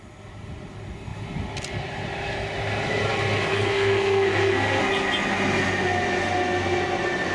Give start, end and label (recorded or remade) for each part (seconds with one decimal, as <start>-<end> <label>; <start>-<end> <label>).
0.0-3.5 recorded; 3.5-4.8 remade; 4.8-7.3 recorded